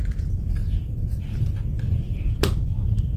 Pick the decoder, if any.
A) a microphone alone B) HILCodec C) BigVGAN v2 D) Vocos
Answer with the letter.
A